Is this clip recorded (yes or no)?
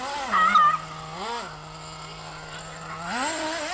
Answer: yes